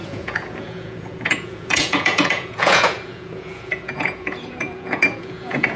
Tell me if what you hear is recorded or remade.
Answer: remade